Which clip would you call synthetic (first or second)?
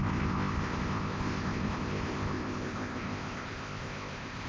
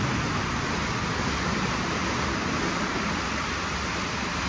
first